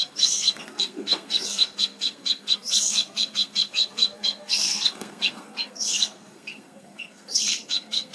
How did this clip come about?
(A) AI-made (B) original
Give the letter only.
A